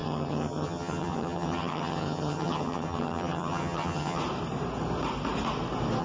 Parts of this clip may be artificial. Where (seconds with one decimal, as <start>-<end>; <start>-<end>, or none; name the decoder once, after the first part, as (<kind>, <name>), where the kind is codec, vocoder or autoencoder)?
0.0-4.2 (vocoder, HiFi-GAN)